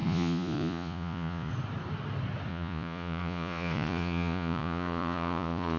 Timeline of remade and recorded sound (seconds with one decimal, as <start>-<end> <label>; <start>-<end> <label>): 0.0-1.5 remade; 1.5-2.5 recorded; 2.5-5.8 remade